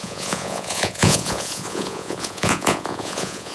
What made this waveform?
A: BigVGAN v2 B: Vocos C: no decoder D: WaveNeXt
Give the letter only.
B